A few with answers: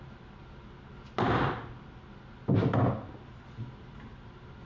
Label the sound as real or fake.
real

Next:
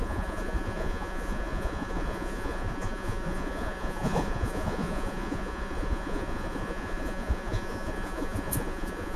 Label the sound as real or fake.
fake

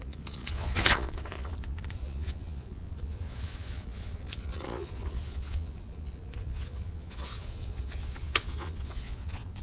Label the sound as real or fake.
fake